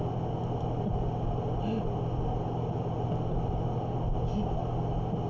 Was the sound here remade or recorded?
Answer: recorded